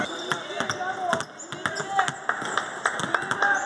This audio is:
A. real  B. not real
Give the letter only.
A